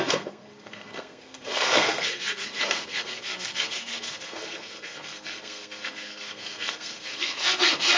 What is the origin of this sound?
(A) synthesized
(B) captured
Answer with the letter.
A